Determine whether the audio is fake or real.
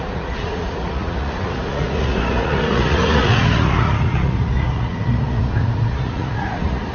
fake